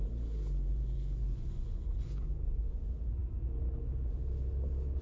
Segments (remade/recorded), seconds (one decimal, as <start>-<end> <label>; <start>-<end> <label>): 0.0-0.7 recorded; 0.7-2.8 remade; 2.8-5.0 recorded